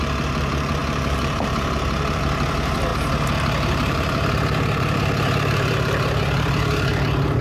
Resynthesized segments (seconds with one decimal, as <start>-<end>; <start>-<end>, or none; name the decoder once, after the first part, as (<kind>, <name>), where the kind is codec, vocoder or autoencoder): 0.0-7.4 (vocoder, BigVGAN v2)